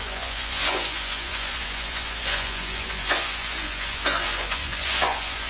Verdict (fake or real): fake